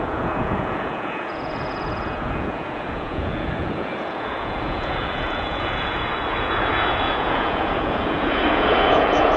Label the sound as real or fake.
fake